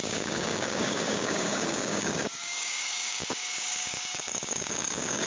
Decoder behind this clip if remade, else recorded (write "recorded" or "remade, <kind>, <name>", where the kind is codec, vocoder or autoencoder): remade, codec, DAC